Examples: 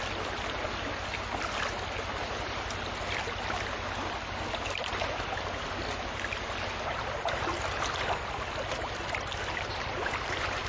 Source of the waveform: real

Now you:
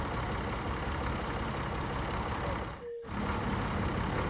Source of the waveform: real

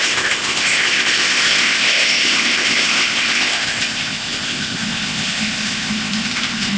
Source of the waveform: fake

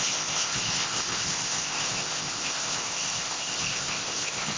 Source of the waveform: fake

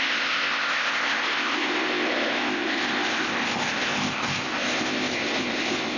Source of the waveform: fake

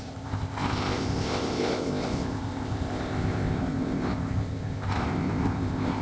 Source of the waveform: fake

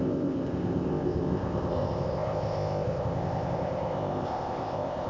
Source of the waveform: fake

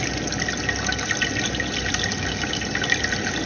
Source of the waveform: real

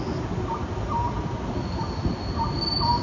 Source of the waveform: real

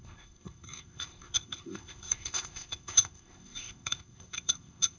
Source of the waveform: fake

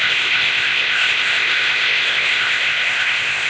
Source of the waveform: fake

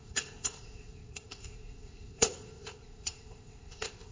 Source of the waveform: fake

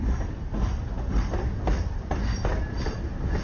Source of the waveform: real